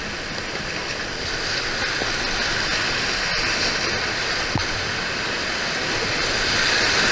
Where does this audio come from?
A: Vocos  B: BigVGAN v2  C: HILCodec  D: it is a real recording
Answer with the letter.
D